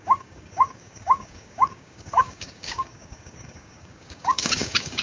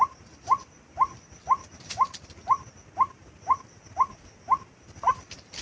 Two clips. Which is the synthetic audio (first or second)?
first